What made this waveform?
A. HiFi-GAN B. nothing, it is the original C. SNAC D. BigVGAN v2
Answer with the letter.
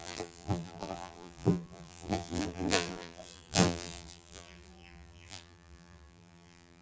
D